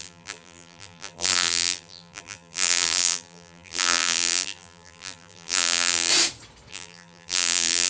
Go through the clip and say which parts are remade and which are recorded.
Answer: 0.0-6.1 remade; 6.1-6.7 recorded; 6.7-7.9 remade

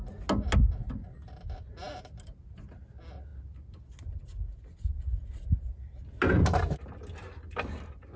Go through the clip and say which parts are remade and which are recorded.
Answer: 0.0-8.2 recorded

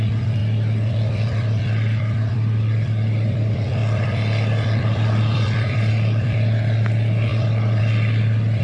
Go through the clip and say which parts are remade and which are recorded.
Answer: 0.0-0.4 remade; 0.4-0.9 recorded; 0.9-8.6 remade

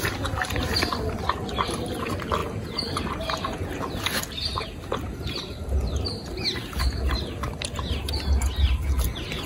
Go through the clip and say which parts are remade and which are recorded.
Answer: 0.0-9.5 recorded